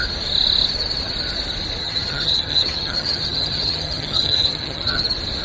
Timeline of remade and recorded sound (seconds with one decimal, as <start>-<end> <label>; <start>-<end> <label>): 0.0-1.8 recorded; 1.8-5.0 remade; 5.0-5.4 recorded